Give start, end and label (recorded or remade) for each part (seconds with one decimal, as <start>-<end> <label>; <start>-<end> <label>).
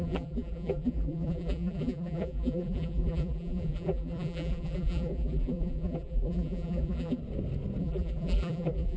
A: 0.0-7.2 remade; 7.2-7.8 recorded; 7.8-9.0 remade